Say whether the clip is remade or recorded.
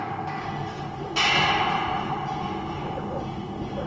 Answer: recorded